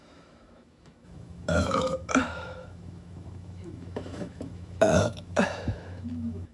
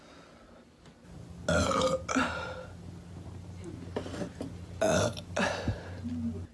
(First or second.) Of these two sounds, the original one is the second